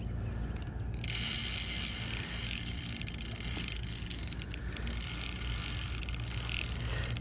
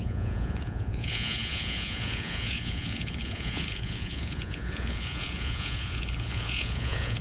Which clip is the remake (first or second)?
second